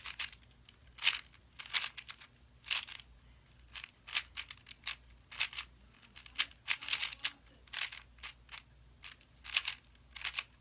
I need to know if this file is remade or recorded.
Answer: recorded